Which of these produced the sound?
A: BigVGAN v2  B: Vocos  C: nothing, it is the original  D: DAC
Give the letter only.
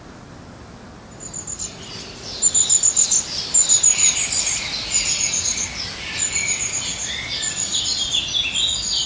C